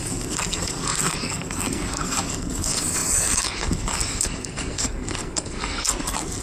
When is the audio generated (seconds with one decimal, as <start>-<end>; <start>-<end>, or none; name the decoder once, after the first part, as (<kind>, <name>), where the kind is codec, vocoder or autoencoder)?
0.0-6.4 (codec, SNAC)